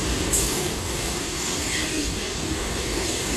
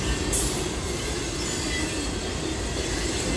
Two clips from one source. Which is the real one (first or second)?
second